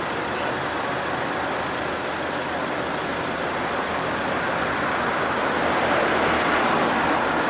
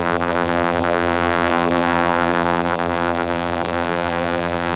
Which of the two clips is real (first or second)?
first